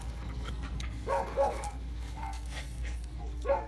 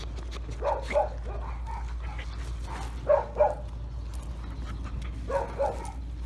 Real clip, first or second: second